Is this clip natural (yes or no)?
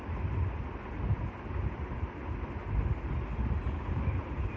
yes